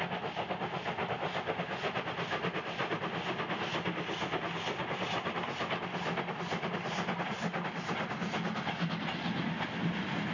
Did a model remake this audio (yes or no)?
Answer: no